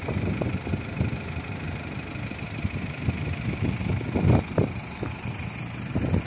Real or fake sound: real